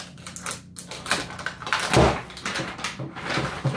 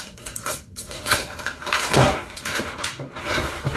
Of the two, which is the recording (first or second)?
first